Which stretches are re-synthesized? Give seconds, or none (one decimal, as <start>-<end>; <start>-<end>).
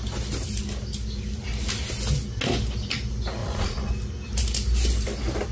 3.4-3.9